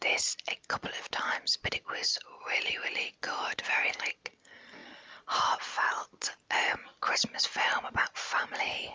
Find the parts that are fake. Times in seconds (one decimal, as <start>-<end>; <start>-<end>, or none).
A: none